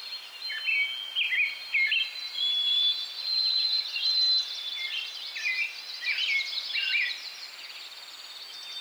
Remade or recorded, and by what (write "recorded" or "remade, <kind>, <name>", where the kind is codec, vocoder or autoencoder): recorded